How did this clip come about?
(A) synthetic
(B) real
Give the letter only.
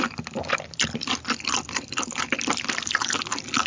B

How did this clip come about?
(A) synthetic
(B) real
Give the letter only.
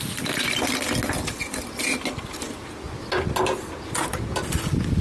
B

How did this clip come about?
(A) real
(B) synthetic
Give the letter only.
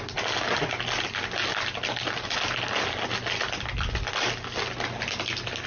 A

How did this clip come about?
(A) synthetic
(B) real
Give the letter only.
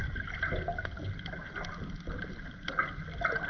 B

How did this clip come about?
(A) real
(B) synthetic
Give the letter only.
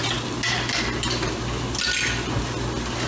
A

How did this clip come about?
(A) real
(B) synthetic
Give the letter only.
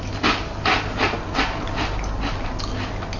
A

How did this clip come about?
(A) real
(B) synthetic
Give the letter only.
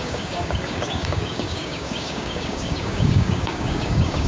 B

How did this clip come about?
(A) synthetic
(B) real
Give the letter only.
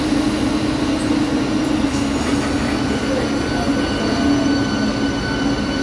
B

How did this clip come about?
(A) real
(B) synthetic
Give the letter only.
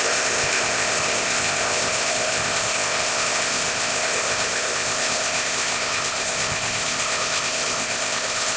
B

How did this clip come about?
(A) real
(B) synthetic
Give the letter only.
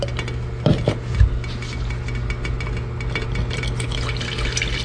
A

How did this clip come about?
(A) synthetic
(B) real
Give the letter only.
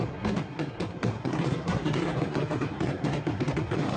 A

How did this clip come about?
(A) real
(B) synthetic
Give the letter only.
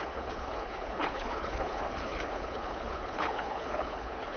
B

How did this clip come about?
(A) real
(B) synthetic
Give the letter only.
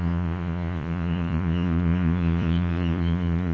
B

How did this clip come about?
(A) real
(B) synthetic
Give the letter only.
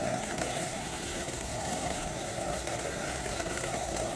B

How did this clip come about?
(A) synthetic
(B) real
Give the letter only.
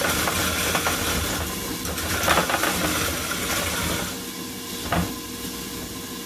B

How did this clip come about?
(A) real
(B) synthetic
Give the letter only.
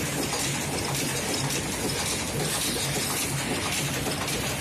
A